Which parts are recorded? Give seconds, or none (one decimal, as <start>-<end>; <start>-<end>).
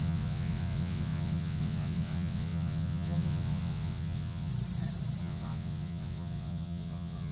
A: 4.5-5.2